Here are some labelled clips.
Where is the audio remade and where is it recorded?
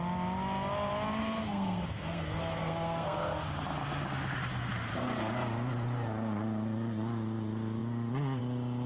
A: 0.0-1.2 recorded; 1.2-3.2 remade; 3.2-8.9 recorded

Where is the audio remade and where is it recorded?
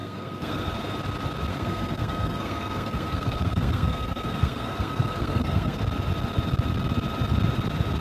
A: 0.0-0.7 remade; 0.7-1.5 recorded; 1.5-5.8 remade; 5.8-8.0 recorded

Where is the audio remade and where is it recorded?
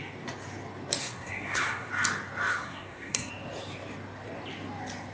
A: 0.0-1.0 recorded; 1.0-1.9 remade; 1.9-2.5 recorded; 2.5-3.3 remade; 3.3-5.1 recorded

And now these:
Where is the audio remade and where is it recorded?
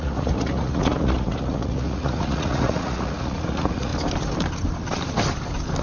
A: 0.0-3.9 remade; 3.9-5.8 recorded